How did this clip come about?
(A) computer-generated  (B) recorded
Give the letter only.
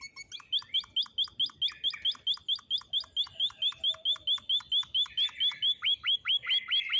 B